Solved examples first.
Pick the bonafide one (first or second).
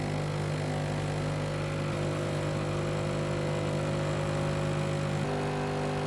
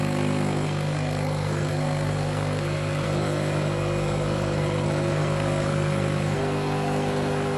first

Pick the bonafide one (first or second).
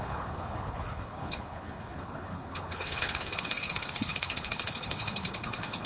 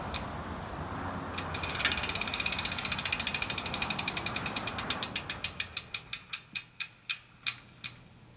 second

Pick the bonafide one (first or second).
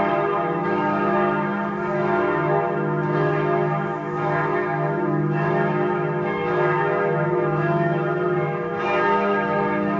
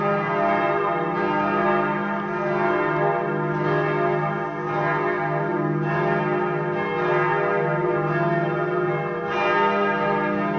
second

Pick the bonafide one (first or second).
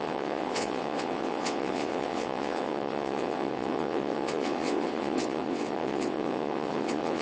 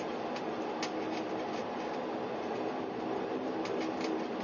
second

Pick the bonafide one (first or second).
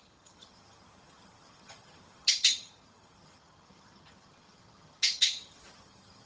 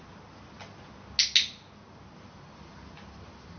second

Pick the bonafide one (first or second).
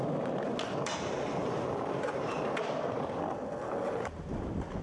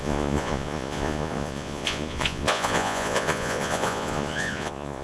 first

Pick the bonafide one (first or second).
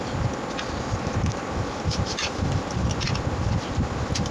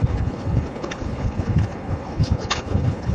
first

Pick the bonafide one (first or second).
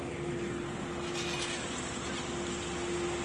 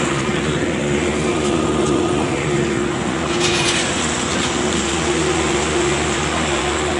first